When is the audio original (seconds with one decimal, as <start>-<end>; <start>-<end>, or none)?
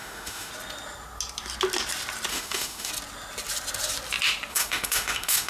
0.5-2.3; 2.9-4.5